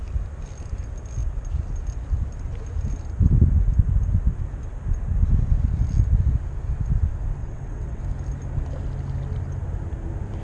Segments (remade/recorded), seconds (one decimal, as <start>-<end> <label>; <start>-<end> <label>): 0.0-7.4 recorded; 7.4-8.0 remade; 8.0-10.4 recorded